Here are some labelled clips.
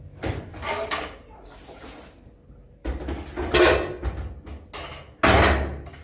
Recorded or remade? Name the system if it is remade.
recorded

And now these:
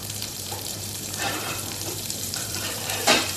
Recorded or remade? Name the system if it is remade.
remade, vocoder, BigVGAN v2